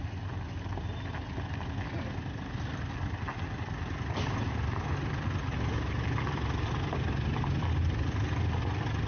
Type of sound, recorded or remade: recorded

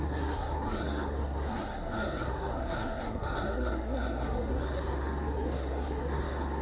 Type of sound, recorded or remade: remade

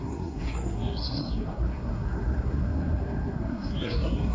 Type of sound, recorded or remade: remade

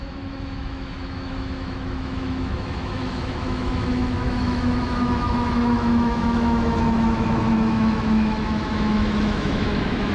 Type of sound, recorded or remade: remade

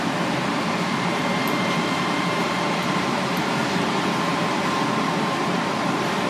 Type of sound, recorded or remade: remade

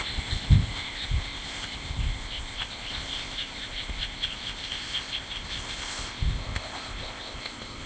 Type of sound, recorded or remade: remade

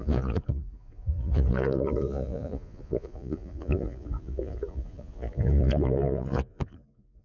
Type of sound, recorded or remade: remade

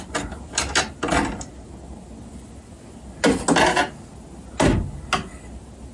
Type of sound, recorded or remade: recorded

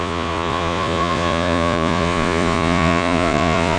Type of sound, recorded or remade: remade